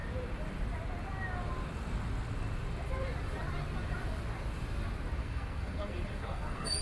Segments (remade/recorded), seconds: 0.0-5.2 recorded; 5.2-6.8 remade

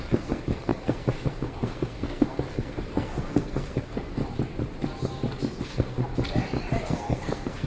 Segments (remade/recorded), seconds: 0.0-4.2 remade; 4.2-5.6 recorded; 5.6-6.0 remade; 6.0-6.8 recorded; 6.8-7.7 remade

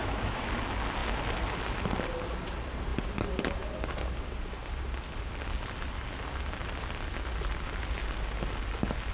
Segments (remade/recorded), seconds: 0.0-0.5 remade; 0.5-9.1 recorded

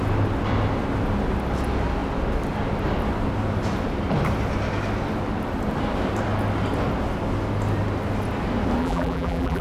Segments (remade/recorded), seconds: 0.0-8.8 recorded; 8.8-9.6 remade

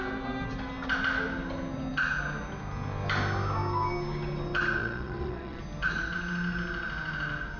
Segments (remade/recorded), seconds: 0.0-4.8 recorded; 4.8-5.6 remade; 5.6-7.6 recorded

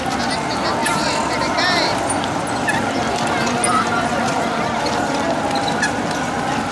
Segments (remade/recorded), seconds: 0.0-6.7 recorded

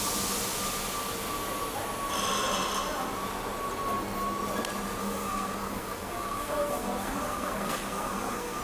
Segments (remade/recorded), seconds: 0.0-5.0 recorded; 5.0-8.6 remade

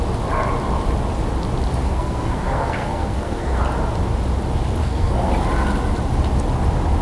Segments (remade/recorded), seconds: 0.0-1.8 recorded; 1.8-3.6 remade; 3.6-4.8 recorded; 4.8-5.3 remade; 5.3-7.0 recorded